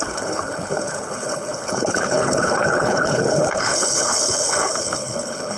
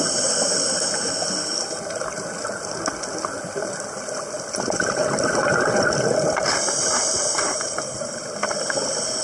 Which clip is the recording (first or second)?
second